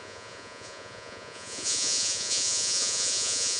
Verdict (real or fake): fake